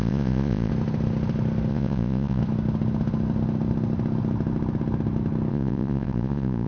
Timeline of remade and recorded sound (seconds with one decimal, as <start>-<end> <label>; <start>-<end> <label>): 0.0-0.7 remade; 0.7-1.7 recorded; 1.7-2.4 remade; 2.4-5.5 recorded; 5.5-6.7 remade